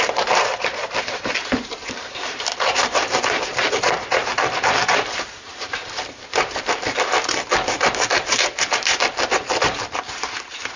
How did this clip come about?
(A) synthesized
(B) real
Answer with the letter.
A